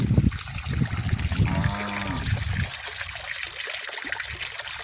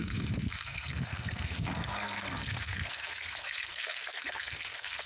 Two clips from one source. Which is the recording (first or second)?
first